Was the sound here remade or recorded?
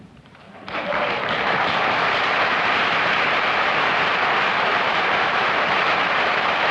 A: remade